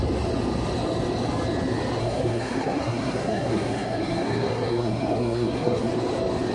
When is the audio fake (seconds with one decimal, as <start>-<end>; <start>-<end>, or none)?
2.0-5.9